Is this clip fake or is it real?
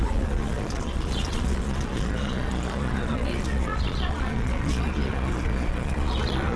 fake